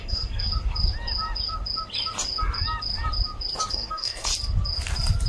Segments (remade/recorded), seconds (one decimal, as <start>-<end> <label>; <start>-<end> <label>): 0.0-0.5 remade; 0.5-3.7 recorded; 3.7-4.3 remade; 4.3-5.3 recorded